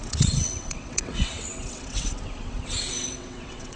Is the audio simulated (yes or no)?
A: yes